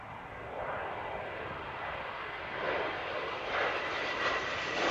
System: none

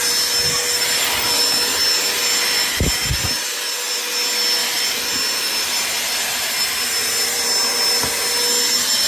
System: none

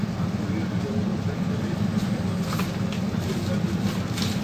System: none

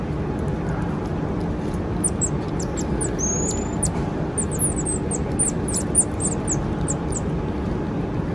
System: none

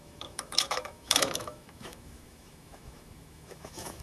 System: autoencoder, DAC-VAE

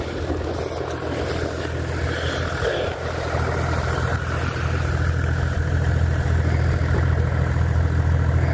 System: none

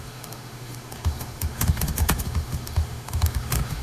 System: autoencoder, DAC-VAE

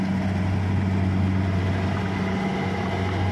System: none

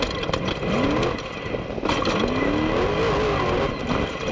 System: none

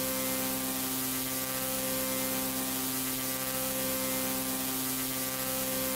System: none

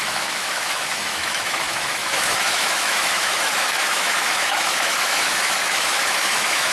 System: autoencoder, DAC-VAE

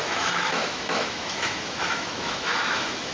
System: autoencoder, DAC-VAE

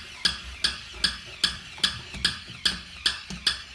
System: none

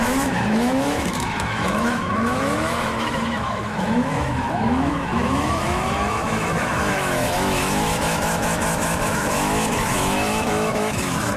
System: autoencoder, DAC-VAE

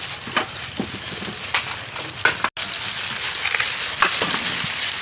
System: none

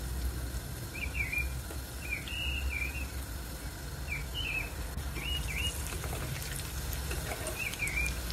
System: none